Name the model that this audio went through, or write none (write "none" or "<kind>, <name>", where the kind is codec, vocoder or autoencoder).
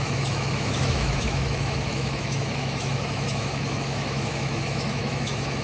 autoencoder, DAC-VAE